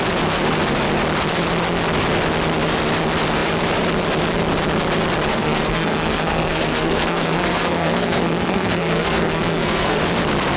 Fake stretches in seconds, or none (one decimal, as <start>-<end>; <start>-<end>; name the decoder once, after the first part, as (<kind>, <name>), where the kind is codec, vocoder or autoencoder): 5.3-10.0 (codec, SNAC)